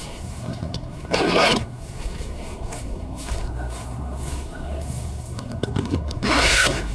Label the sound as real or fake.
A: fake